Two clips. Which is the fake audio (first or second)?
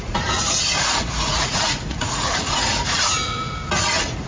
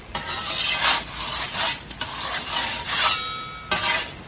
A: first